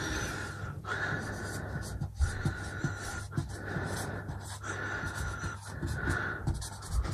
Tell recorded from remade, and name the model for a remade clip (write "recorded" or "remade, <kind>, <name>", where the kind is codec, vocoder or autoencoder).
recorded